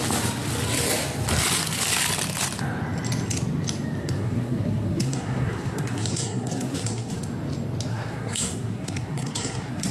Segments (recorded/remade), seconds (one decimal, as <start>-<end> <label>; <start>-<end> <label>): 0.0-4.0 recorded; 4.0-7.2 remade; 7.2-7.9 recorded; 7.9-9.9 remade